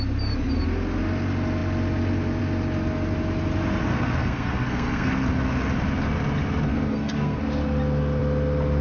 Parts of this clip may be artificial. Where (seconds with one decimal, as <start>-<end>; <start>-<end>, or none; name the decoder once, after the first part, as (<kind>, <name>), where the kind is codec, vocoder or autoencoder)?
3.9-5.1 (codec, SNAC); 6.7-7.4